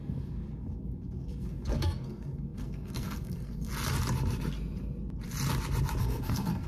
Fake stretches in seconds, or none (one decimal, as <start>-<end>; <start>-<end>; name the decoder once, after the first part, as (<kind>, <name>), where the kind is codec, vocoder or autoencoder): 0.0-3.7 (codec, SNAC); 6.0-6.7